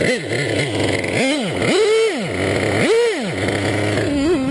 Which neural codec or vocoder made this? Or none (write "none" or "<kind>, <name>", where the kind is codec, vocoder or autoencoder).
none